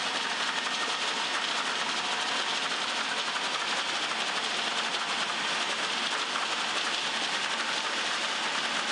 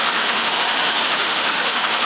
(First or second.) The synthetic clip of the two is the second